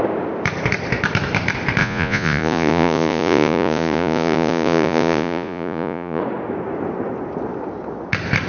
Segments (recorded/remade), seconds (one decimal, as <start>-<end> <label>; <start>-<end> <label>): 0.0-1.8 recorded; 1.8-6.2 remade; 6.2-8.5 recorded